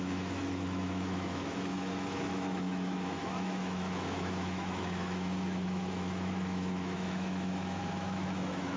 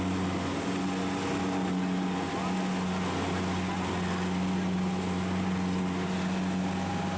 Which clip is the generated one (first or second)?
first